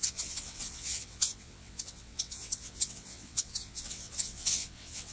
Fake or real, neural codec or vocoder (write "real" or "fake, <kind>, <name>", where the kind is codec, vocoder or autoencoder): fake, vocoder, WaveNeXt